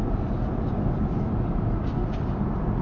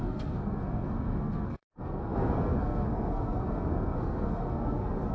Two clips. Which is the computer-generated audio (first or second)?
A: second